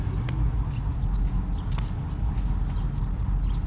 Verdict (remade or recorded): recorded